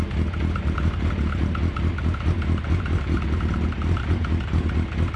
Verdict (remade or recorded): recorded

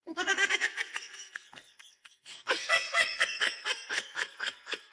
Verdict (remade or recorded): remade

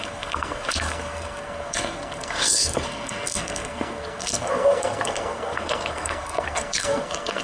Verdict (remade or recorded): remade